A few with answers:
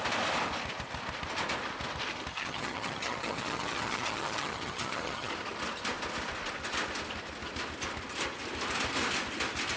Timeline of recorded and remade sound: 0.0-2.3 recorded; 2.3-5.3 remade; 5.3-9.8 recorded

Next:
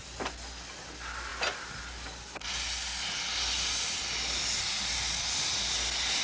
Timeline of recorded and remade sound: 0.0-6.2 recorded

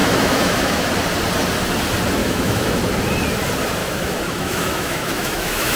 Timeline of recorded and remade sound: 0.0-0.9 remade; 0.9-2.2 recorded; 2.2-2.8 remade; 2.8-3.8 recorded; 3.8-5.8 remade

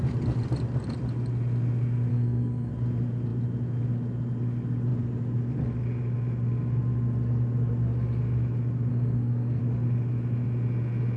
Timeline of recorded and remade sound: 0.0-2.1 recorded; 2.1-2.7 remade; 2.7-8.9 recorded; 8.9-9.6 remade; 9.6-11.2 recorded

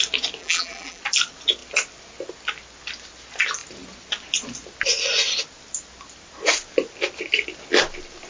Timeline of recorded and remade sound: 0.0-0.4 recorded; 0.4-1.0 remade; 1.0-8.3 recorded